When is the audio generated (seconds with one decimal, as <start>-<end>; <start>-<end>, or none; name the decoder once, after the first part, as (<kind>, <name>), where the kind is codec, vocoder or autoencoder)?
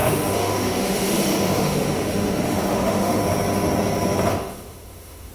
0.0-3.2 (autoencoder, DAC-VAE); 4.3-5.3